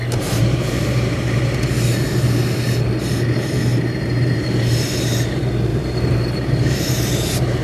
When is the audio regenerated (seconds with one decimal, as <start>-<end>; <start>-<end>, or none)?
0.4-1.4; 3.7-4.4; 5.7-7.6